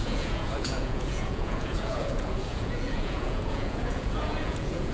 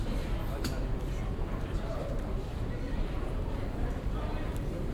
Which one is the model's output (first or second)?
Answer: first